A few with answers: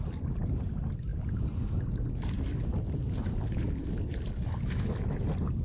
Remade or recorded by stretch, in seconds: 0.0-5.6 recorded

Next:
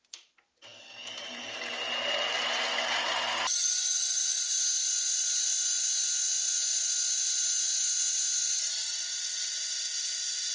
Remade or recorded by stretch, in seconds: 0.0-3.5 recorded; 3.5-4.5 remade; 4.5-10.5 recorded